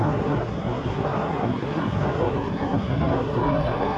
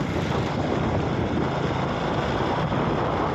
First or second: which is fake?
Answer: first